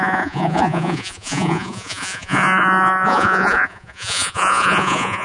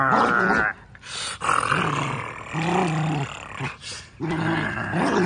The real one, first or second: second